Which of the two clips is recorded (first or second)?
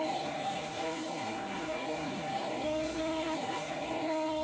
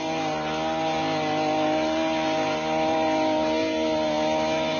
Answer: second